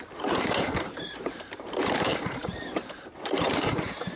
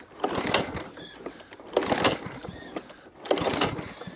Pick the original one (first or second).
second